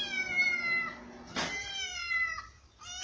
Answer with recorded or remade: recorded